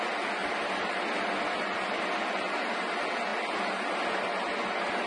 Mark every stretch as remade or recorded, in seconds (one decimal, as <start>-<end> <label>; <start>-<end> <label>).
0.0-5.1 recorded